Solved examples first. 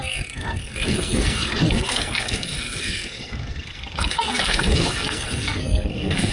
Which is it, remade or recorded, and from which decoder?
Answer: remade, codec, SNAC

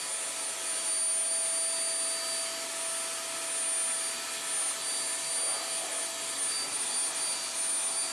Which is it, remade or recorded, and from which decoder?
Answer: recorded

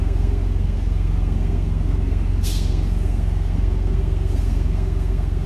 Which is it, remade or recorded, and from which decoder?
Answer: remade, codec, SNAC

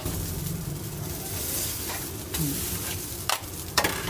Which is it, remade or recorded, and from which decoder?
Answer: recorded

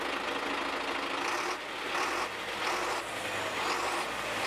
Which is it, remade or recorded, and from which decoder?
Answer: recorded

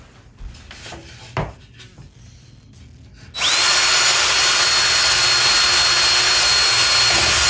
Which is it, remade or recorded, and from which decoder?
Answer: recorded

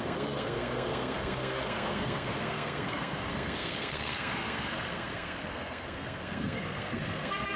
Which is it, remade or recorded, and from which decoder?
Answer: remade, codec, SNAC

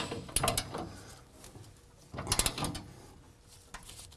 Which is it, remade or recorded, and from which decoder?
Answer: recorded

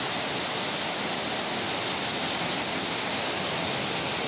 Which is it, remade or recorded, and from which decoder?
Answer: recorded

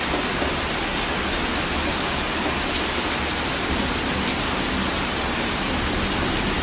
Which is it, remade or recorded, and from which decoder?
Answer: recorded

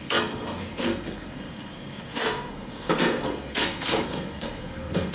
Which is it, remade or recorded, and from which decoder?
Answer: remade, codec, SNAC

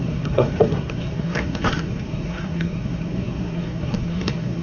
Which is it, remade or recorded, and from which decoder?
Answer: remade, codec, SNAC